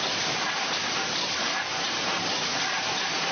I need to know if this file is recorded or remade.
remade